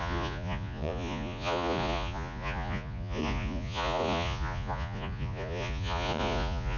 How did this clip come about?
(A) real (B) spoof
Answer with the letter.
B